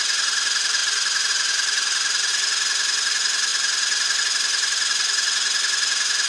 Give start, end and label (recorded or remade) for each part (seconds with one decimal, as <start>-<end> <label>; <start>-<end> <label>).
0.0-6.3 recorded